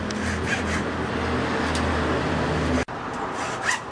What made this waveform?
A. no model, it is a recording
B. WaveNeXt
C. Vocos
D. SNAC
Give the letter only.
A